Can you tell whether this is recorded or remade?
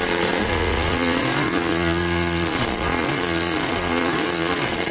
remade